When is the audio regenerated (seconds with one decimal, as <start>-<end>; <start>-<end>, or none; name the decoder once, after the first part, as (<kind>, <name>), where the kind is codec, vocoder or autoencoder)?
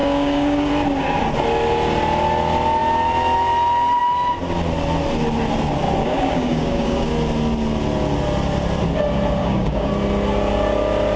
0.0-0.7 (codec, DAC); 6.0-7.1; 9.4-9.9